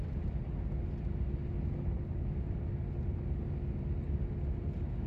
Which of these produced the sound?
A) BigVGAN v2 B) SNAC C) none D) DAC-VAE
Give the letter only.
C